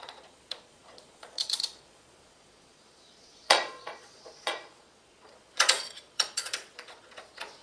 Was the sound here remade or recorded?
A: remade